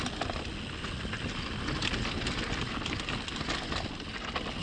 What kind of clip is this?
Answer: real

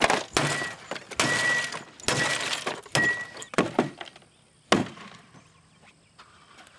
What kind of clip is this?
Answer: real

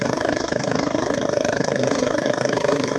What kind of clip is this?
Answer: fake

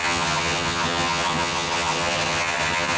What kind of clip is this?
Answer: fake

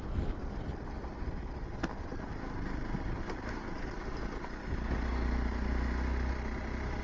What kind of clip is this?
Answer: real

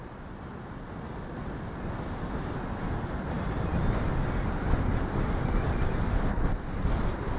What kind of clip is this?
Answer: real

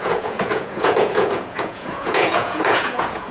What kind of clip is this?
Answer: fake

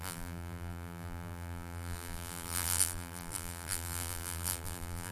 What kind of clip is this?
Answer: fake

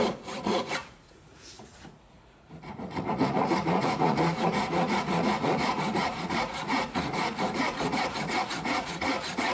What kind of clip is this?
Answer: fake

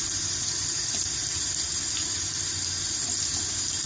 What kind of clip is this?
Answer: real